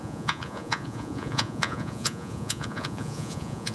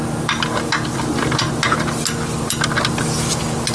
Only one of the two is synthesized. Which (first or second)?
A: first